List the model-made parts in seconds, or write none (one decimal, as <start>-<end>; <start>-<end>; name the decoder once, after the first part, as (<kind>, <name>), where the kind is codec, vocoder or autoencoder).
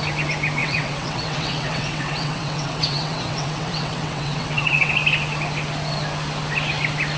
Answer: 0.6-4.9 (vocoder, WaveNeXt)